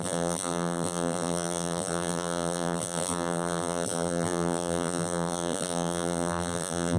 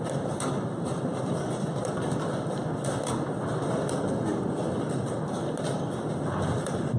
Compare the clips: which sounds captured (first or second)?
second